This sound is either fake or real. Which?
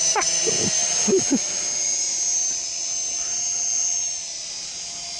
real